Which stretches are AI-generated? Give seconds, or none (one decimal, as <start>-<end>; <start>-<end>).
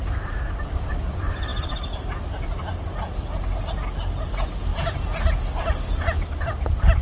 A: none